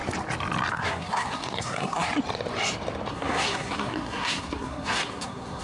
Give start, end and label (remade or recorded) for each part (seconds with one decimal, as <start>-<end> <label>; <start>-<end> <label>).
0.0-0.7 recorded; 0.7-2.1 remade; 2.1-3.1 recorded; 3.1-5.6 remade